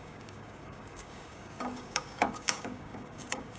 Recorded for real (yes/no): no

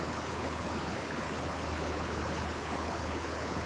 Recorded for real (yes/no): no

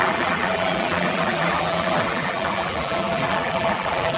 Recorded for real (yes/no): no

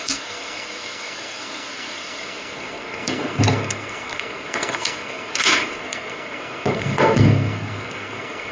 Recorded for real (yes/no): no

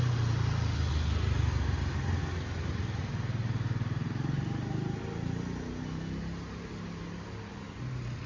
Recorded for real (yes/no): yes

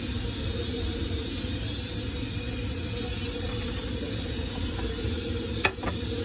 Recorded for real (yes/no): yes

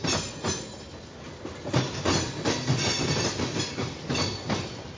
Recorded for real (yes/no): yes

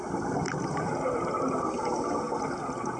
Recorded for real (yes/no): yes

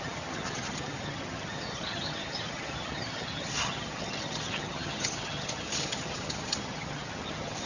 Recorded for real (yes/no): no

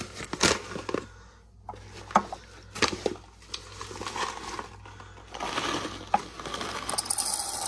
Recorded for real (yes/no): yes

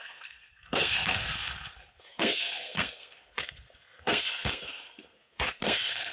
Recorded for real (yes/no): no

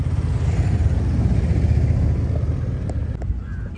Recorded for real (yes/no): yes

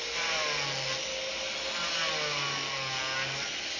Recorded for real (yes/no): yes